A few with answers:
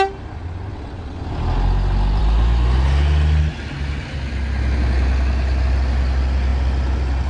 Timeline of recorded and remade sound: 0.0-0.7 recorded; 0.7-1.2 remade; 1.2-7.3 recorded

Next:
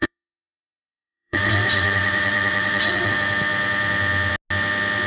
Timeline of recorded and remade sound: 0.0-3.1 remade; 3.1-5.1 recorded